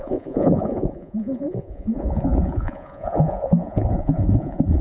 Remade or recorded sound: remade